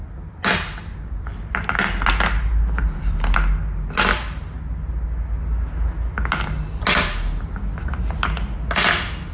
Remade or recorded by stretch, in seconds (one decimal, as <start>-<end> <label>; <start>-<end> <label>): 0.0-9.3 recorded